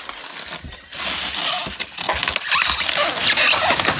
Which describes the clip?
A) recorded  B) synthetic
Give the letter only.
A